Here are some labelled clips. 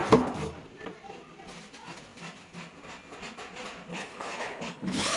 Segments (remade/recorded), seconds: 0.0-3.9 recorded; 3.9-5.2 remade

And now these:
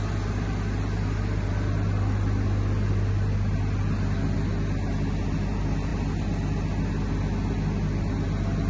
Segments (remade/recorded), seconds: 0.0-8.7 recorded

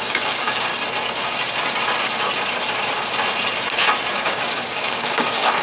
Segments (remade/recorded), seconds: 0.0-0.7 remade; 0.7-4.1 recorded; 4.1-5.6 remade